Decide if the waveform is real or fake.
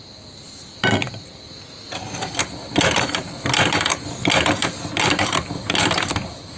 real